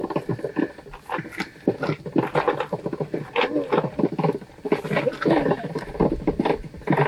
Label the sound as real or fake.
real